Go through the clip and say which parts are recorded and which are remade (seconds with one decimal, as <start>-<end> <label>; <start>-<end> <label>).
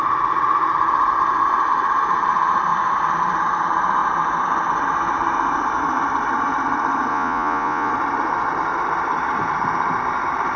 0.0-7.1 recorded; 7.1-7.9 remade; 7.9-10.6 recorded